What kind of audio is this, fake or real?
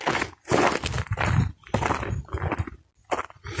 real